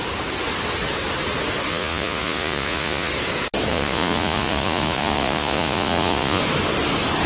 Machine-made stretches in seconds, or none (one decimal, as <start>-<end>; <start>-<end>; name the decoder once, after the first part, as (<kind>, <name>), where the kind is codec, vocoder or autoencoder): 1.7-3.1 (vocoder, Vocos); 3.7-6.4